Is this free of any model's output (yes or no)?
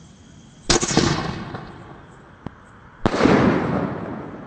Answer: yes